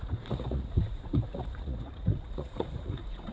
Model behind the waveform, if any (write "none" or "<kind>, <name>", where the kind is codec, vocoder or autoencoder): vocoder, Vocos